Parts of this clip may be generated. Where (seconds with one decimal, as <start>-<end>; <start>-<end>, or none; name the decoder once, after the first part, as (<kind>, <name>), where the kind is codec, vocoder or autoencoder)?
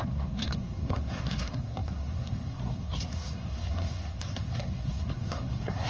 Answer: 0.0-5.9 (codec, SNAC)